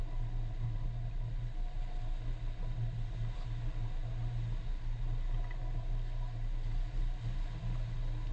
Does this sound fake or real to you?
real